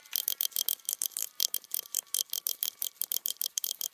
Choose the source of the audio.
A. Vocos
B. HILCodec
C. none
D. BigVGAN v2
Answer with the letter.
D